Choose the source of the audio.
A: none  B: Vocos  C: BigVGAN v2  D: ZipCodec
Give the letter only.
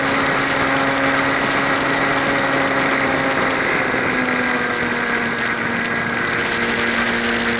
A